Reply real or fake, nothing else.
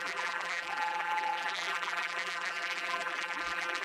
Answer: fake